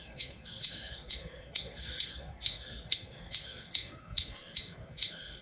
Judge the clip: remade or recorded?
remade